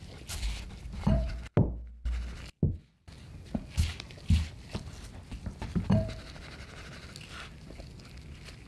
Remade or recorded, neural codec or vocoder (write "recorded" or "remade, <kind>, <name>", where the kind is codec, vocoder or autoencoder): recorded